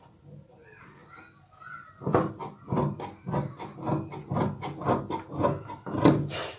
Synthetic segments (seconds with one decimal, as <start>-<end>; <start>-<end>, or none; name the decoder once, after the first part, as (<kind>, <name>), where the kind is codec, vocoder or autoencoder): none

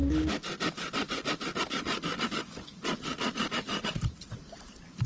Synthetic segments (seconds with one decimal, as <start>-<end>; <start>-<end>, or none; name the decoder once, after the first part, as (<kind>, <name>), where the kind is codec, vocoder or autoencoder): 3.1-5.1 (vocoder, BigVGAN v2)

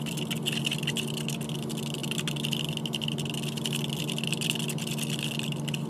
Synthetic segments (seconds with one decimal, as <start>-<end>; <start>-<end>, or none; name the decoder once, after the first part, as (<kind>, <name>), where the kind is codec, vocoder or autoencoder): none